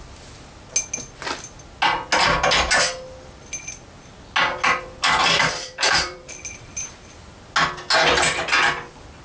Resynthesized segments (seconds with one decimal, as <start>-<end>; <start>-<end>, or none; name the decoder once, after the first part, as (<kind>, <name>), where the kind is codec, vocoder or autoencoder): 5.2-6.9 (vocoder, BigVGAN v2)